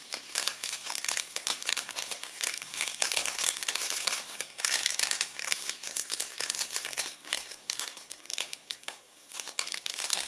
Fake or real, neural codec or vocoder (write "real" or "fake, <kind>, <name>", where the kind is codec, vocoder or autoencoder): fake, codec, SNAC